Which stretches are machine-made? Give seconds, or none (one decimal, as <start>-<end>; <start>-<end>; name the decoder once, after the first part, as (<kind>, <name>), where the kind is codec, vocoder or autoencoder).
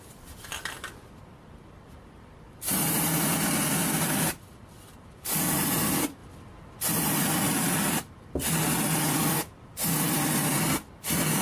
none